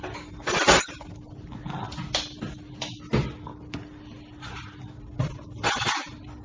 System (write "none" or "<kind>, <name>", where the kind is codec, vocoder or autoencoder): none